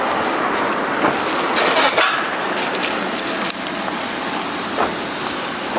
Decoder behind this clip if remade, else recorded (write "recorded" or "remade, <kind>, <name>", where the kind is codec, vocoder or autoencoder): recorded